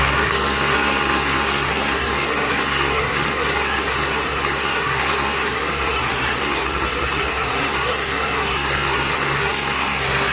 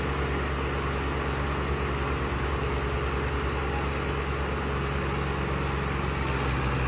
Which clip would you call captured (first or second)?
second